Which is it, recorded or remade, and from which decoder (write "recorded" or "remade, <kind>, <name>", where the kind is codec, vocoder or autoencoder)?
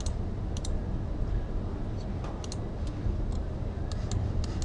recorded